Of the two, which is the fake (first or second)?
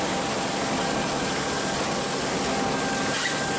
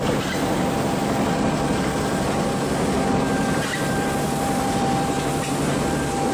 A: second